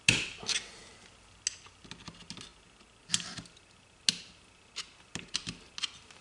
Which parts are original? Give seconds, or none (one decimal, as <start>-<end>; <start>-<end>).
0.0-6.2